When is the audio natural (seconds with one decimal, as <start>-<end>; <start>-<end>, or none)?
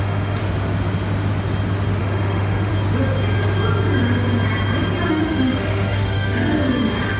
0.4-2.0; 2.7-5.1